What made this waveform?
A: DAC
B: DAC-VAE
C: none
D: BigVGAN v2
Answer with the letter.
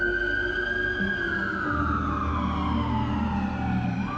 C